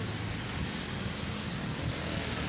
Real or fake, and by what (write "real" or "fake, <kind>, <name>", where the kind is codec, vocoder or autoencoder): real